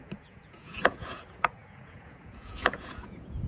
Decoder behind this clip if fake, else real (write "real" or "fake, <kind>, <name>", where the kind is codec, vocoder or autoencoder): fake, vocoder, Vocos